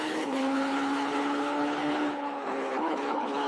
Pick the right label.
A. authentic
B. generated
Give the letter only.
B